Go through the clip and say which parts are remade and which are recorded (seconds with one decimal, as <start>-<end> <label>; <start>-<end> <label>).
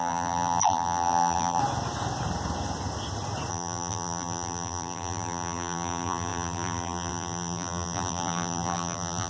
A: 0.0-1.6 remade; 1.6-3.5 recorded; 3.5-9.3 remade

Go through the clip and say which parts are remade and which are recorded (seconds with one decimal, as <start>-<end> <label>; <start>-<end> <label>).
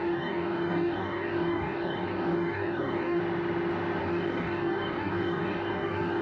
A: 0.0-3.2 remade; 3.2-4.0 recorded; 4.0-6.2 remade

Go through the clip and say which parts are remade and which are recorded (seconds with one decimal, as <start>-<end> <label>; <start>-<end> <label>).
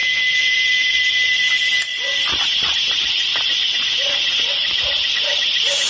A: 0.0-1.9 recorded; 1.9-2.9 remade; 2.9-5.9 recorded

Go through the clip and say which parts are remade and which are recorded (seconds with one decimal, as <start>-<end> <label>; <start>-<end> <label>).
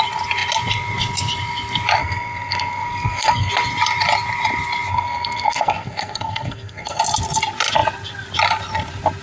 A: 0.0-2.0 recorded; 2.0-3.5 remade; 3.5-4.9 recorded; 4.9-7.0 remade; 7.0-9.2 recorded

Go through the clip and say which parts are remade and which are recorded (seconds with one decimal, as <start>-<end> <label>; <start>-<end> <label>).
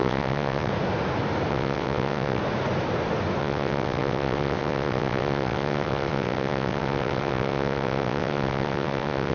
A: 0.0-0.7 remade; 0.7-1.5 recorded; 1.5-2.4 remade; 2.4-3.4 recorded; 3.4-9.3 remade